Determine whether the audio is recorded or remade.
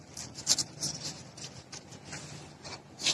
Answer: recorded